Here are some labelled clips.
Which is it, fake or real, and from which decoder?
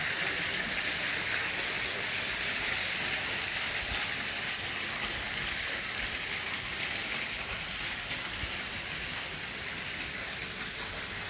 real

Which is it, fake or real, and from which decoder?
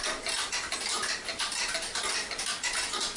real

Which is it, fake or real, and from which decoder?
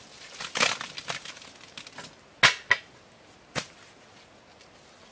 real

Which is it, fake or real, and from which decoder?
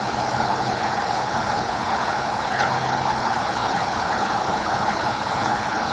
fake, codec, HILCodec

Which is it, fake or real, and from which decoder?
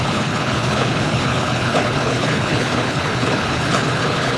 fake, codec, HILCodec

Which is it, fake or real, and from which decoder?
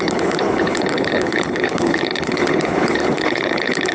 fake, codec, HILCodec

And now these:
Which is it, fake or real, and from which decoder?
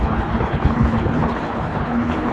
fake, codec, HILCodec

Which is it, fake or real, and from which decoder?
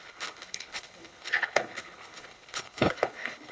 fake, codec, HILCodec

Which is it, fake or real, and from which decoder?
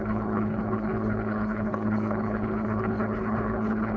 fake, codec, HILCodec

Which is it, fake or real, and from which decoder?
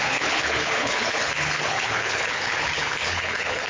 fake, codec, HILCodec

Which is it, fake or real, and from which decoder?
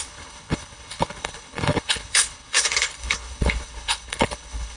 fake, codec, HILCodec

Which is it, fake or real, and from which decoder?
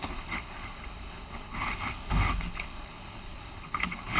fake, codec, HILCodec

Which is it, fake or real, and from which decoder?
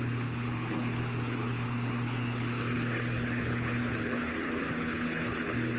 fake, codec, HILCodec